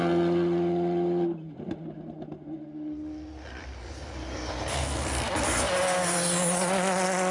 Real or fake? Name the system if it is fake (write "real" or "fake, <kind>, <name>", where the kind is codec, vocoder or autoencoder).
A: real